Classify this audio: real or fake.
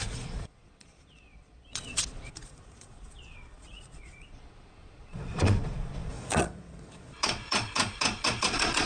fake